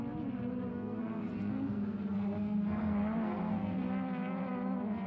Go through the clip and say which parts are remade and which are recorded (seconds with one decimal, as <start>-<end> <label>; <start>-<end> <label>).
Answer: 0.0-0.7 recorded; 0.7-3.8 remade; 3.8-5.1 recorded